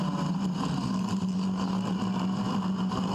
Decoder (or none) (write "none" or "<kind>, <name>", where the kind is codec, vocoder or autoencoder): none